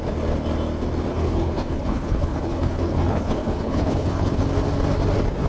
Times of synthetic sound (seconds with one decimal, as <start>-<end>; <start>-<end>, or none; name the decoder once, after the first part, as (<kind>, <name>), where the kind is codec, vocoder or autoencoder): 1.1-4.4 (codec, HILCodec)